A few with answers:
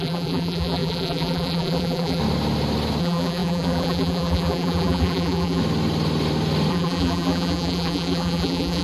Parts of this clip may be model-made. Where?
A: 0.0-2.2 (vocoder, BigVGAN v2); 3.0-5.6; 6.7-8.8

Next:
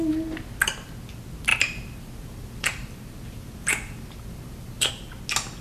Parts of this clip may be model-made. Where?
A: 1.5-4.9 (vocoder, BigVGAN v2)

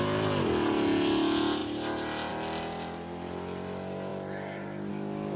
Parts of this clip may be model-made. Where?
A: none

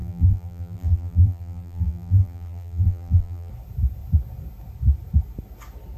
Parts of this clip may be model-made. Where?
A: 0.0-3.5 (vocoder, BigVGAN v2)

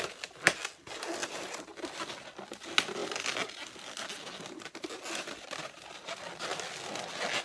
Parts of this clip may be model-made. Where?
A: 1.2-1.7 (vocoder, BigVGAN v2)